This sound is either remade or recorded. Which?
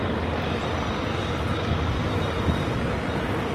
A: recorded